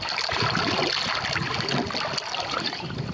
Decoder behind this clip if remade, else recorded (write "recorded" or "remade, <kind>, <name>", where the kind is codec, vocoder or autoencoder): recorded